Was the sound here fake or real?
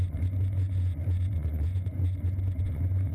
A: fake